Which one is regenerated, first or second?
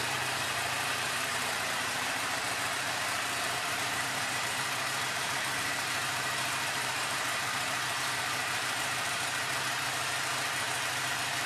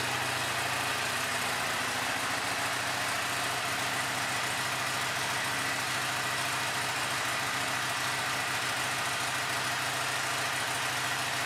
first